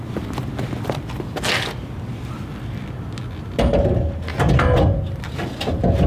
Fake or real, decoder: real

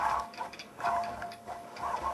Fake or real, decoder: fake, codec, DAC